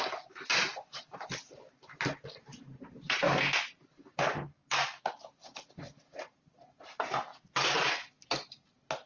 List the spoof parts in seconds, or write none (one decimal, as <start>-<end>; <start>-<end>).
none